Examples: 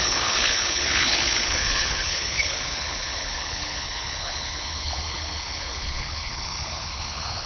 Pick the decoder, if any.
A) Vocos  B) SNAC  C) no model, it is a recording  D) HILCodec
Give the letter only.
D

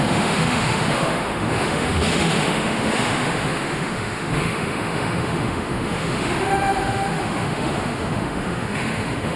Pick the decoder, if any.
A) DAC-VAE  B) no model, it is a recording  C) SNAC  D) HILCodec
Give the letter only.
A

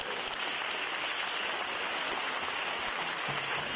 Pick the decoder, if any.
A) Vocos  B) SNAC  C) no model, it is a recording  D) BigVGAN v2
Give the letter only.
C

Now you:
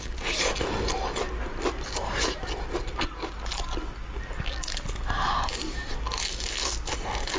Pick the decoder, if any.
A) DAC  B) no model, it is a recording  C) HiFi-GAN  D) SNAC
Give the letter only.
B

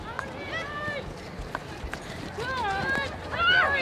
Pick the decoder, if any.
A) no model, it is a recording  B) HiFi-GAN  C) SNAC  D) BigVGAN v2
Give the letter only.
A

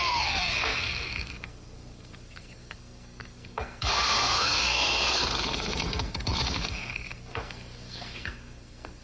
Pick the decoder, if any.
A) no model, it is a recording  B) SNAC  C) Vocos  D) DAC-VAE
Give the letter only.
B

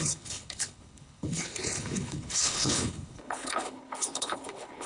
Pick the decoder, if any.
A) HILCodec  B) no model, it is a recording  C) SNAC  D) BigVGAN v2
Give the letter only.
A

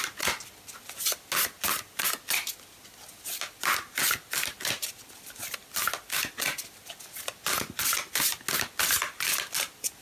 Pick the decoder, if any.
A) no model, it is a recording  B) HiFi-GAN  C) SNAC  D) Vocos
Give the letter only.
A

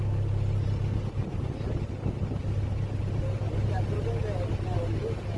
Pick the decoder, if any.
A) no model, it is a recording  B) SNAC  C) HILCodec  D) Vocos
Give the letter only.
A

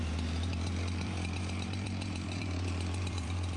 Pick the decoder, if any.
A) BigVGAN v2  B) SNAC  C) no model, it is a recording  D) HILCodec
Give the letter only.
A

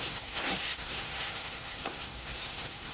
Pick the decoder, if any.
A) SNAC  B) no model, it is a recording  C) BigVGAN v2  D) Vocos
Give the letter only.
A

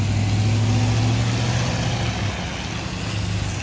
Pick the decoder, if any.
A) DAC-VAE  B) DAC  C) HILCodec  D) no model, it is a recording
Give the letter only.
D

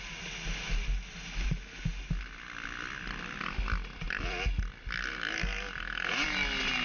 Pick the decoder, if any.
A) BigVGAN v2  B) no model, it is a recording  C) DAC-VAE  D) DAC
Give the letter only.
B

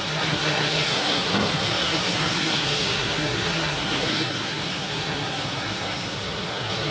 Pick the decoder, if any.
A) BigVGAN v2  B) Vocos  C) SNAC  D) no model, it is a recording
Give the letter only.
C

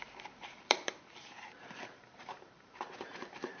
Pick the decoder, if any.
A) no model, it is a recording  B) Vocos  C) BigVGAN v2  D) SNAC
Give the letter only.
C